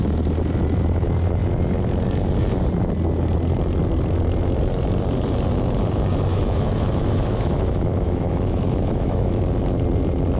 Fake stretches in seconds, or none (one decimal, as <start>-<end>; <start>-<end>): 6.3-9.4